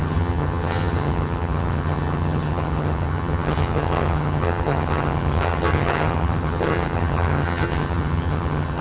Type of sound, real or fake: fake